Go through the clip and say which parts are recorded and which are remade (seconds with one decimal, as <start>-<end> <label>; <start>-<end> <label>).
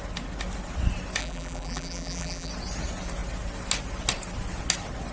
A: 0.0-1.2 recorded; 1.2-2.5 remade; 2.5-5.1 recorded